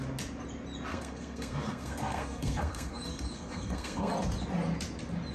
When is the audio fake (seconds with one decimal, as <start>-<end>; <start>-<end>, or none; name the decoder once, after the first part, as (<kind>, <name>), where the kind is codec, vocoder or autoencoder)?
0.9-4.1 (codec, SNAC)